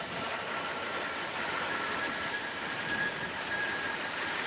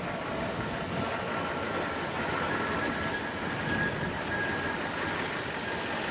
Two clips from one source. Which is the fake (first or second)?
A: first